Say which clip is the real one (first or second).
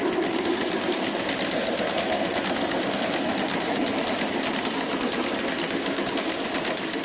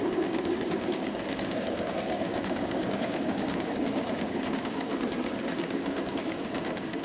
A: first